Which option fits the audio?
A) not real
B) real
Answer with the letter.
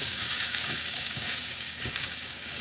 A